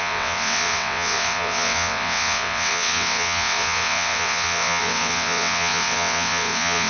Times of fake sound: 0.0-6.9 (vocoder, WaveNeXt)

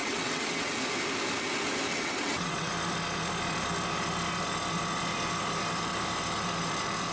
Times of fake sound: 0.0-0.7 (vocoder, WaveNeXt); 1.9-2.7

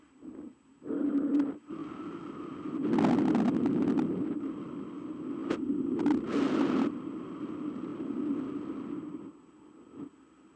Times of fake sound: none

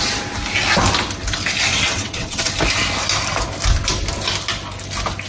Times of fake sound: 1.7-2.5 (vocoder, WaveNeXt)

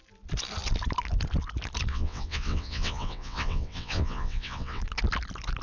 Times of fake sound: 1.9-4.8 (vocoder, WaveNeXt)

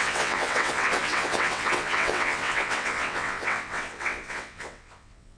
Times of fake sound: 0.0-5.4 (vocoder, WaveNeXt)

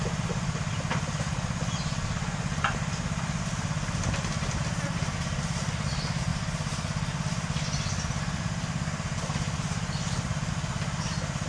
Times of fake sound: none